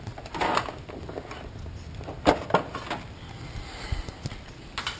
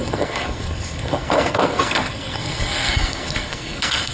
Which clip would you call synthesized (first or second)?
second